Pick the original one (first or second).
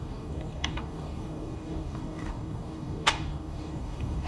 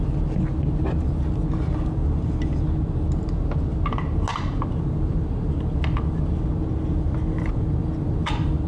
second